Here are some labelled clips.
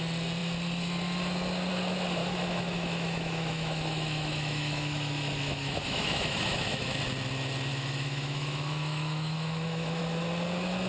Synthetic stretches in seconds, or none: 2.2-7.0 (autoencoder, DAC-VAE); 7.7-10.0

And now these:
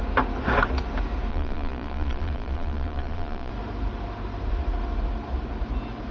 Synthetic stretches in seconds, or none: 1.3-3.5 (vocoder, Vocos)

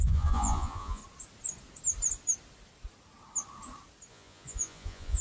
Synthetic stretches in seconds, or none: 0.0-1.0 (vocoder, Vocos); 4.1-5.2